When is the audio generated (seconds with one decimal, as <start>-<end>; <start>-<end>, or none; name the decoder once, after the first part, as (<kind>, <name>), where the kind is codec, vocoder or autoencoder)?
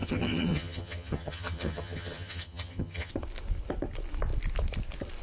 0.0-3.1 (vocoder, HiFi-GAN)